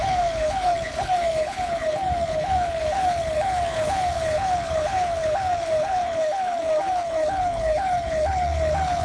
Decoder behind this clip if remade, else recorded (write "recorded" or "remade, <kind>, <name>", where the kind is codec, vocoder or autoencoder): remade, codec, HILCodec